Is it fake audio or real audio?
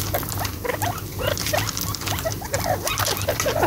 real